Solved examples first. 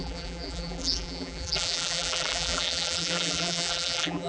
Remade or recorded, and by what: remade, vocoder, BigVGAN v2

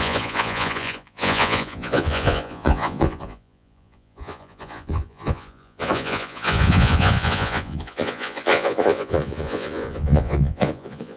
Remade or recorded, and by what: remade, vocoder, Vocos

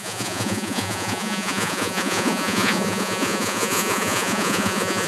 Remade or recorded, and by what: remade, vocoder, Vocos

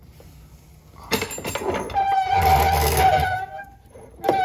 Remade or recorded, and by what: recorded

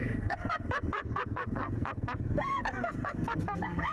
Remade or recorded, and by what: remade, codec, SNAC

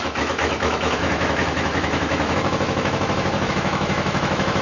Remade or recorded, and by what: remade, autoencoder, DAC-VAE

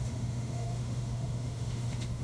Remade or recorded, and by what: remade, autoencoder, DAC-VAE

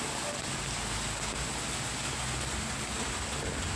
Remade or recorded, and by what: recorded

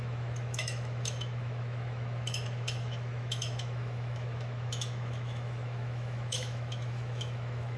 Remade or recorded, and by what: remade, autoencoder, DAC-VAE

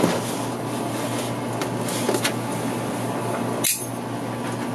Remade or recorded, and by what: recorded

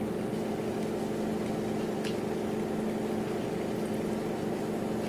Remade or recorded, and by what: recorded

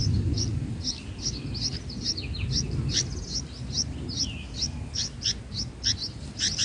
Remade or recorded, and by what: recorded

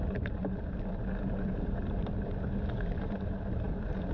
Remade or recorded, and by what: remade, vocoder, BigVGAN v2